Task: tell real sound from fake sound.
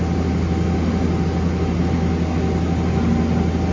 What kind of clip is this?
real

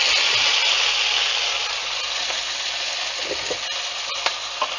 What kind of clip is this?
real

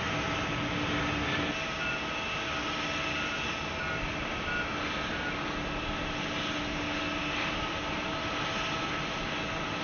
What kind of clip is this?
real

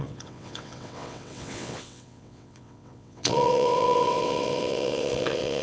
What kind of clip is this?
fake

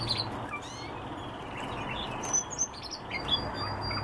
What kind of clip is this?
real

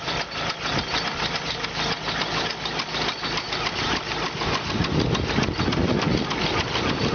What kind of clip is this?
real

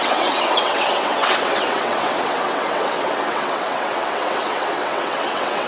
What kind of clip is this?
fake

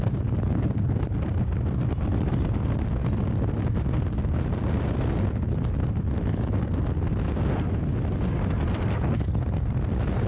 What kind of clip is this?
real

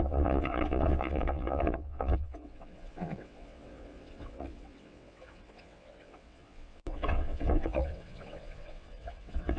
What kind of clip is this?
fake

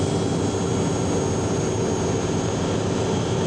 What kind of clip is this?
real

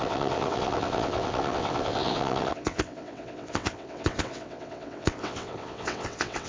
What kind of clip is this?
fake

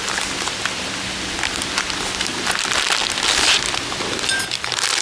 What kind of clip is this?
real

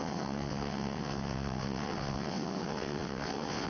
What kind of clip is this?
fake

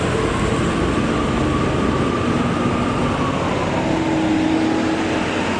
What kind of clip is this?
real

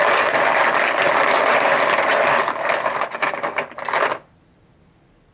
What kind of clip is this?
real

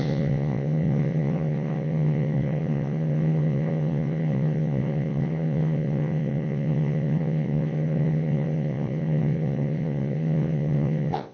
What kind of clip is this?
fake